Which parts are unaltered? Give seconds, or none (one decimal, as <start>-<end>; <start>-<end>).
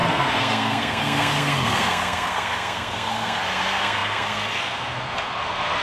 none